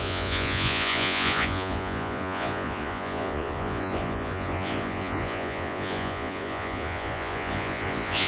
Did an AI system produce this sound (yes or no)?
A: yes